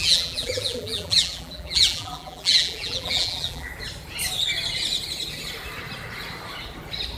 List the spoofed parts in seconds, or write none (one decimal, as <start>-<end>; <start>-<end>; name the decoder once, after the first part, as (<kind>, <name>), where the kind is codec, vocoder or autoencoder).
0.0-3.7 (vocoder, BigVGAN v2)